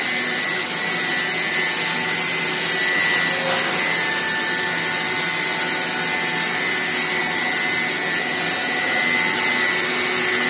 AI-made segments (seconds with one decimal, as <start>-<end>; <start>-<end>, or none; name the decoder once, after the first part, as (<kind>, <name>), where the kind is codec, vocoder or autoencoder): none